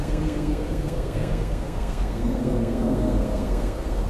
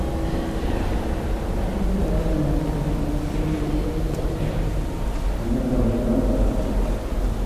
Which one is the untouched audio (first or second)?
second